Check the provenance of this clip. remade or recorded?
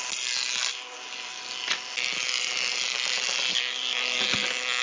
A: remade